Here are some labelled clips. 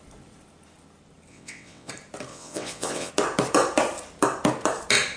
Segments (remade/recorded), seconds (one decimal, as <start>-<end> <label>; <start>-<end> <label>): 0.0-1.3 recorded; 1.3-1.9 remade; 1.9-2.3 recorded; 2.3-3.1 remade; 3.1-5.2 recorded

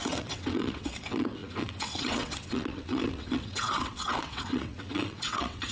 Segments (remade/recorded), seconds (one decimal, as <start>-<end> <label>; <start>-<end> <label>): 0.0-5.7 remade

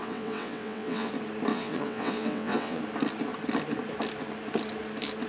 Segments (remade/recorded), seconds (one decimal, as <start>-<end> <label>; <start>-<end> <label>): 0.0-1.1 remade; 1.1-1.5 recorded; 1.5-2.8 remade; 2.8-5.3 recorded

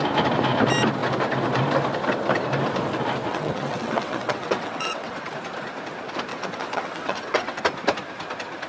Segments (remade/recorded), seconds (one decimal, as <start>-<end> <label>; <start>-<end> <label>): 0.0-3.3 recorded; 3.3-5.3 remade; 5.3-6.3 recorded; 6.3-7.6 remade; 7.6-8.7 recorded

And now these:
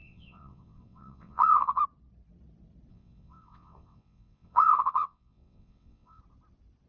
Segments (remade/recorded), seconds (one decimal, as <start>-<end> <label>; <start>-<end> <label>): 0.0-1.8 remade; 1.8-2.9 recorded; 2.9-6.2 remade; 6.2-6.9 recorded

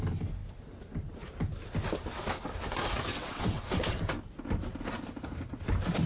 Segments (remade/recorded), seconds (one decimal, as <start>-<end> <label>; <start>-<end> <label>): 0.0-3.1 recorded; 3.1-4.0 remade; 4.0-6.1 recorded

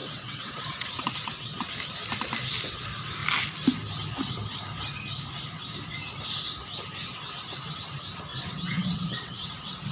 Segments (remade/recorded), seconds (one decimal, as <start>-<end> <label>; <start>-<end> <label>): 0.0-1.7 remade; 1.7-8.3 recorded; 8.3-9.9 remade

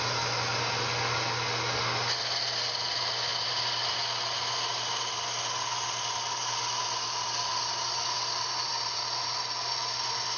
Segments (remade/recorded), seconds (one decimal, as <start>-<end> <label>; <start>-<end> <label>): 0.0-10.4 recorded